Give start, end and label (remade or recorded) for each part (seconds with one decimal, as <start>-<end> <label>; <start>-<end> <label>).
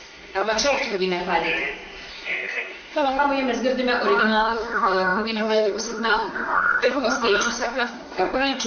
0.0-1.2 remade; 1.2-2.1 recorded; 2.1-3.2 remade; 3.2-4.2 recorded; 4.2-8.7 remade